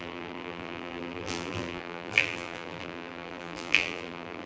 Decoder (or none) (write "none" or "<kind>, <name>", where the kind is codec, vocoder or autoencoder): vocoder, BigVGAN v2